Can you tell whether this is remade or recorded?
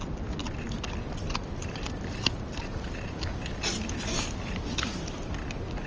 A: recorded